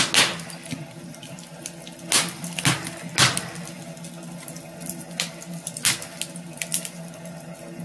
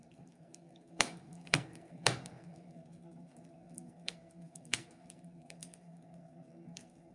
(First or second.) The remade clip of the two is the second